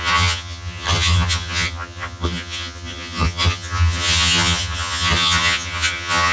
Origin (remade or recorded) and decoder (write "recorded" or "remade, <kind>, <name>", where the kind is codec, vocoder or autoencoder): remade, vocoder, HiFi-GAN